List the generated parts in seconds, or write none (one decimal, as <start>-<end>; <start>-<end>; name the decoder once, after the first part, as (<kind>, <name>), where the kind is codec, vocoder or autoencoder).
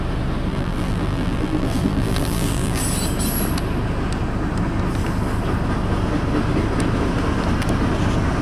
0.5-2.8 (vocoder, BigVGAN v2)